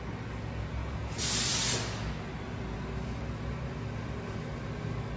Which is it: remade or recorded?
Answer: recorded